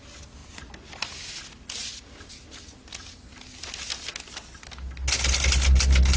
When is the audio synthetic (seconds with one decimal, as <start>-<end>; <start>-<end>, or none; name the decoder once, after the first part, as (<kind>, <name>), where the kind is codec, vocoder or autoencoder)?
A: none